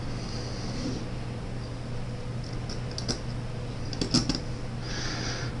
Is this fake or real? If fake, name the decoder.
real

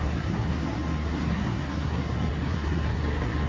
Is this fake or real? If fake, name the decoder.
fake, codec, SNAC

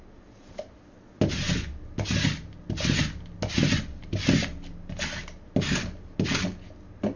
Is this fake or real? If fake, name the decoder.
real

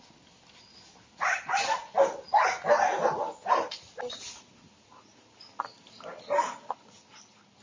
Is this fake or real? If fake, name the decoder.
real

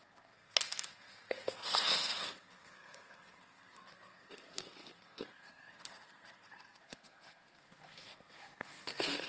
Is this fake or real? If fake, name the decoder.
fake, codec, SNAC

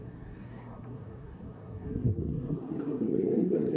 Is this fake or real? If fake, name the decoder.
fake, codec, SNAC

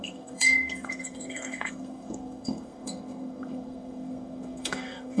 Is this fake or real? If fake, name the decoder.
fake, codec, SNAC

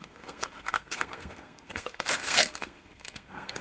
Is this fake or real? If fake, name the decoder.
fake, codec, SNAC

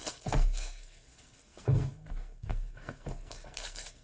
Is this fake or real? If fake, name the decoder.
fake, codec, SNAC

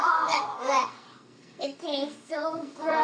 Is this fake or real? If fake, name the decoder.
fake, codec, SNAC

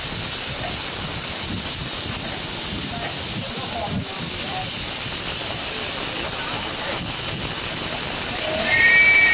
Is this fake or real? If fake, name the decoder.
real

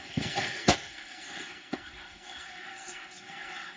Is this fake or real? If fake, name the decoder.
fake, codec, SNAC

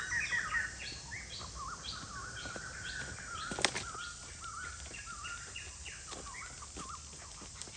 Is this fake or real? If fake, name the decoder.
real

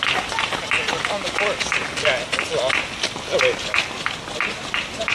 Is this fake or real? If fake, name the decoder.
real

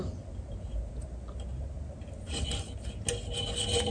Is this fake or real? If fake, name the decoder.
real